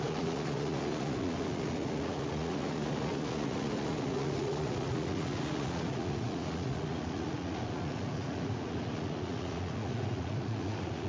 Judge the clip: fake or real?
fake